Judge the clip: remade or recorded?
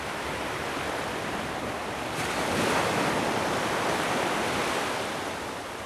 remade